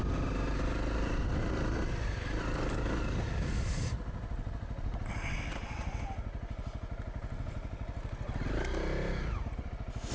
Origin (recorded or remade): recorded